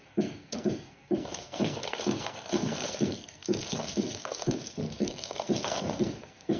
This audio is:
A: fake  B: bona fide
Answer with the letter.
A